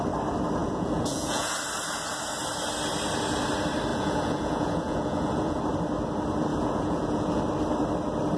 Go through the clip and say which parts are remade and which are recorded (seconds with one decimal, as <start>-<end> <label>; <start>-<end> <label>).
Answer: 0.0-0.6 recorded; 0.6-1.5 remade; 1.5-3.9 recorded; 3.9-5.6 remade; 5.6-6.5 recorded; 6.5-7.4 remade; 7.4-8.4 recorded